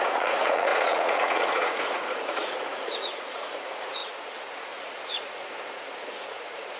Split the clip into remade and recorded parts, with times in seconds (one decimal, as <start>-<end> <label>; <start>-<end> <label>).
0.0-6.8 remade